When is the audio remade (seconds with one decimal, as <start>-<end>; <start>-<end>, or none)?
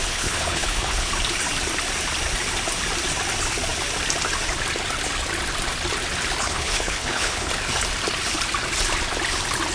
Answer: 0.0-1.1; 6.4-7.5